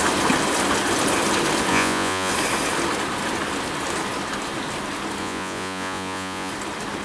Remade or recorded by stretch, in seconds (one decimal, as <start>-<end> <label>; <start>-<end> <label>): 0.0-1.7 recorded; 1.7-2.3 remade; 2.3-5.2 recorded; 5.2-6.5 remade; 6.5-7.0 recorded